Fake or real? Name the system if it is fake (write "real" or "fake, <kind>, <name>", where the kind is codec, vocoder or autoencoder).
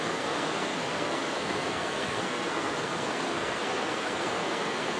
fake, codec, SNAC